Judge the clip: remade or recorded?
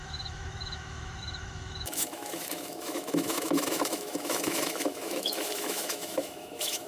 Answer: remade